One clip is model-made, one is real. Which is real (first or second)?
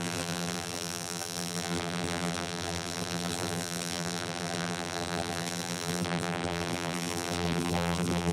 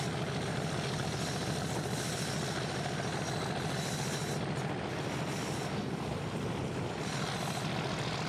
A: second